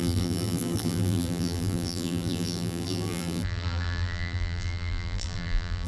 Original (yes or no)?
no